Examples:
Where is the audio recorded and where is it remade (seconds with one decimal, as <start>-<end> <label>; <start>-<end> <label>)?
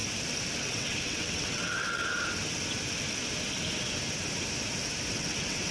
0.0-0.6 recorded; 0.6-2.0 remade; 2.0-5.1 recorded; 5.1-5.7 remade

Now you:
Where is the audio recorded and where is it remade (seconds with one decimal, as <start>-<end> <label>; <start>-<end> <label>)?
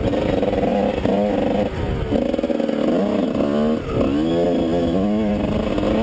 0.0-4.8 recorded; 4.8-5.3 remade; 5.3-6.0 recorded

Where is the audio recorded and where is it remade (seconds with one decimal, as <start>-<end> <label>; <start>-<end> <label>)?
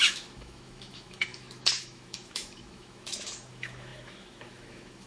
0.0-5.1 remade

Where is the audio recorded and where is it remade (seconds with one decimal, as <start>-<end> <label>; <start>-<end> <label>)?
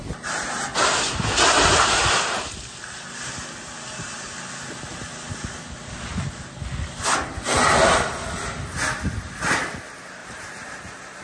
0.0-10.2 recorded; 10.2-11.2 remade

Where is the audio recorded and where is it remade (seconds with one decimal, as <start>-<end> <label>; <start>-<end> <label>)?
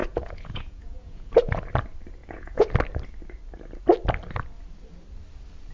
0.0-1.6 remade; 1.6-2.2 recorded; 2.2-2.7 remade; 2.7-5.7 recorded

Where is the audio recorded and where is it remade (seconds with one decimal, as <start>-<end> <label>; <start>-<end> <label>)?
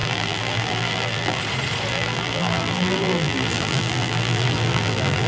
0.0-1.4 remade; 1.4-1.9 recorded; 1.9-5.3 remade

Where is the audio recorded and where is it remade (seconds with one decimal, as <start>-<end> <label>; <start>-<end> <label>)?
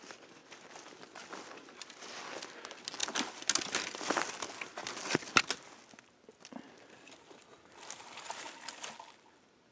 0.0-9.7 recorded